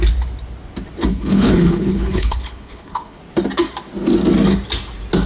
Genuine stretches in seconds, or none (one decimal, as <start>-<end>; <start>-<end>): 0.0-1.1; 3.2-5.3